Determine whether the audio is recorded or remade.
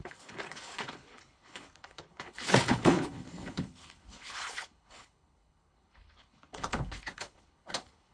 remade